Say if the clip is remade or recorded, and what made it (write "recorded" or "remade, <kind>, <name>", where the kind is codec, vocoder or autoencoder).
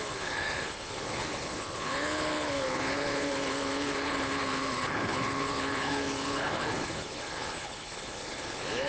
remade, codec, HILCodec